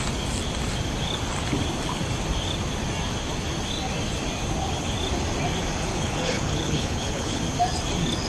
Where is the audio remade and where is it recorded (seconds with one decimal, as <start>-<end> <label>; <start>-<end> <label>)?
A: 0.0-5.9 recorded; 5.9-7.4 remade; 7.4-8.3 recorded